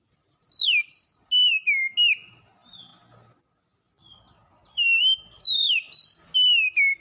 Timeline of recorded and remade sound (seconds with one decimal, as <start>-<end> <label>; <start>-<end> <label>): 0.0-7.0 recorded